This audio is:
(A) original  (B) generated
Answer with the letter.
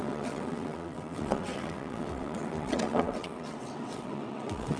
B